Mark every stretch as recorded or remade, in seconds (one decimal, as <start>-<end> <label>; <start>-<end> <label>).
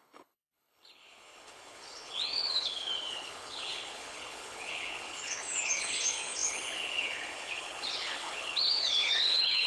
0.0-9.7 remade